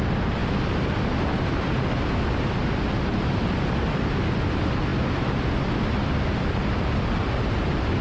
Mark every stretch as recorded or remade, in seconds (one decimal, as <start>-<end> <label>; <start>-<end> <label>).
0.0-8.0 recorded